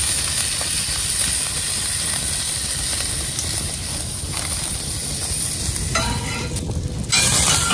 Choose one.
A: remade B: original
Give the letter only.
B